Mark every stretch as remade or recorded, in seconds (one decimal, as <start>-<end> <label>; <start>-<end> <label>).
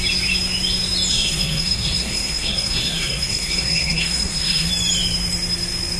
0.0-1.1 recorded; 1.1-4.7 remade; 4.7-6.0 recorded